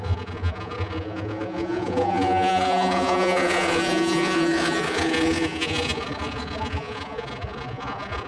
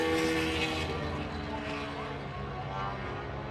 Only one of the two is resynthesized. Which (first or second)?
first